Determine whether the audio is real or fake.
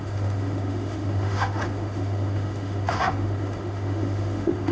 fake